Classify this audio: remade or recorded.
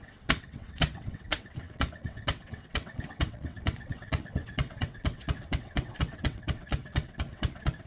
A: remade